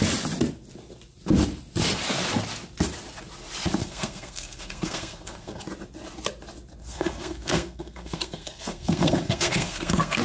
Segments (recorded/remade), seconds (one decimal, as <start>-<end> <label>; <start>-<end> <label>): 0.0-3.8 recorded; 3.8-5.6 remade; 5.6-6.8 recorded; 6.8-10.2 remade